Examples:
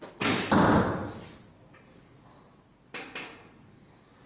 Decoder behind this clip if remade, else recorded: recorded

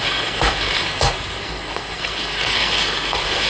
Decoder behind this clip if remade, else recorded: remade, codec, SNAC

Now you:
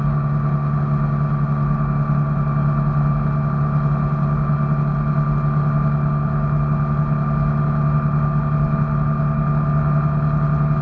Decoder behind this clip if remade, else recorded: recorded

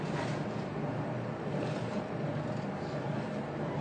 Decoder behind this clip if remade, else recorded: remade, vocoder, BigVGAN v2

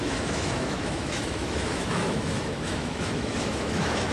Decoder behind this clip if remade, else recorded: remade, autoencoder, DAC-VAE